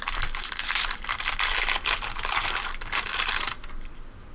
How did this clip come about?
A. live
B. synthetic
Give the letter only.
A